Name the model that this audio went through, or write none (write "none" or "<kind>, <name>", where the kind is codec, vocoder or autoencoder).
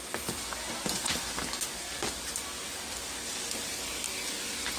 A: none